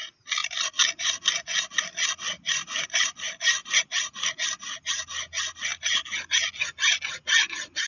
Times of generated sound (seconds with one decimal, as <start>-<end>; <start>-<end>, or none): none